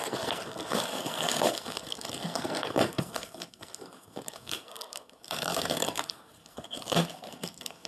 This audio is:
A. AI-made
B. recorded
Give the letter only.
A